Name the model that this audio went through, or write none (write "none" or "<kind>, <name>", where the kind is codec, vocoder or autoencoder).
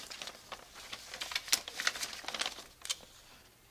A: none